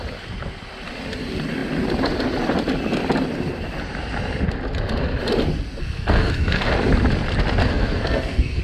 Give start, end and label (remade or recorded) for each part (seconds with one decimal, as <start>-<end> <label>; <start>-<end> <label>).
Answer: 0.0-5.8 recorded; 5.8-6.7 remade; 6.7-7.6 recorded; 7.6-8.6 remade